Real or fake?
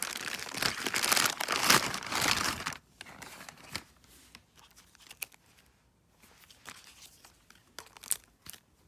real